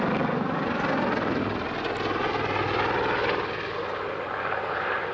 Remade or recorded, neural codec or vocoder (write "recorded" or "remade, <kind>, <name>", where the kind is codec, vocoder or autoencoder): recorded